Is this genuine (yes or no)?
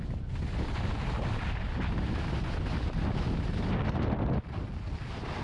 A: yes